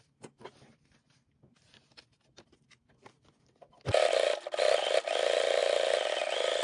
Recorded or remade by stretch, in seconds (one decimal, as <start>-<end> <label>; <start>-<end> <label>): 0.0-6.6 recorded